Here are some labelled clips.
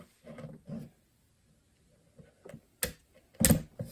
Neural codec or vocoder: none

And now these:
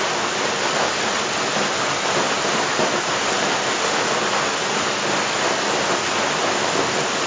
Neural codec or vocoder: none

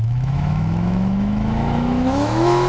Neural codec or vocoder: autoencoder, DAC-VAE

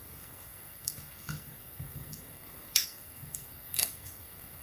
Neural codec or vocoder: codec, SNAC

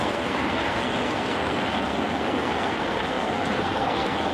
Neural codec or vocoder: codec, SNAC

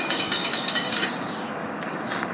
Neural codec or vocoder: codec, DAC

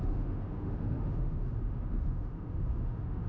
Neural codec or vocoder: autoencoder, DAC-VAE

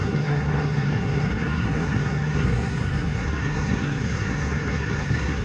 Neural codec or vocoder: codec, SNAC